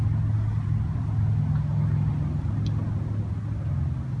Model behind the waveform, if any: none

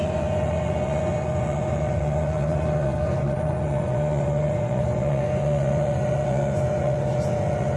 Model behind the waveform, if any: vocoder, Vocos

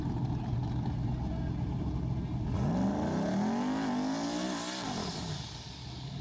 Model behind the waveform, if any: none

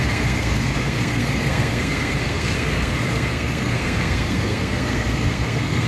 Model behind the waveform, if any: codec, SNAC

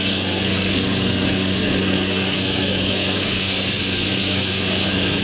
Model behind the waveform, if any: codec, SNAC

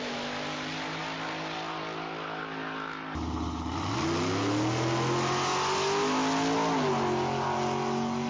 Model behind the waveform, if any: none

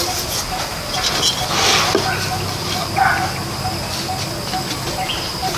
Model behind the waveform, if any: none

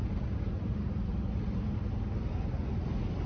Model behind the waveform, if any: none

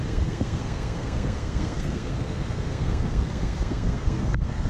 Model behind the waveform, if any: codec, SNAC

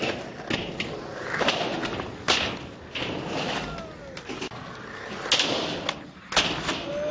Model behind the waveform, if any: none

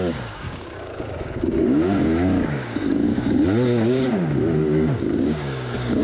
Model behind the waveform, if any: codec, DAC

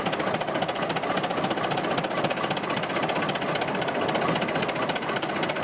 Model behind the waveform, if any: none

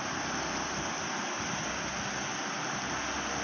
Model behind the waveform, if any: none